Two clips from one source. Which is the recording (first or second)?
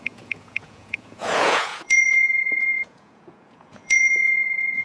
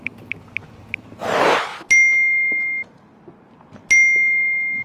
second